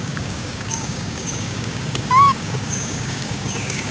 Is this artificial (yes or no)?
yes